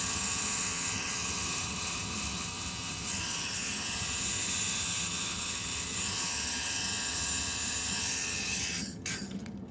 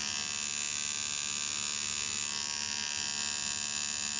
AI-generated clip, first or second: first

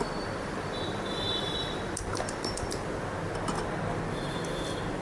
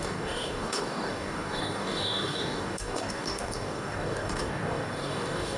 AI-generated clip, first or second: second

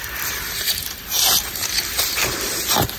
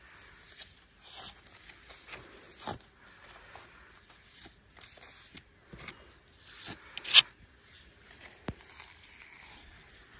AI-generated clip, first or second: first